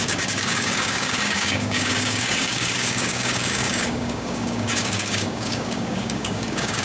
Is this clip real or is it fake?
fake